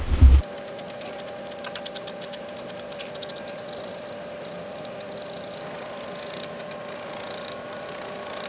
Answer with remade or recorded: recorded